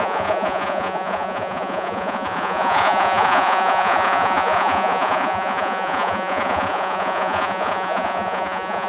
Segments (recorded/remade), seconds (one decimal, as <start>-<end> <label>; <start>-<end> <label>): 0.0-8.9 remade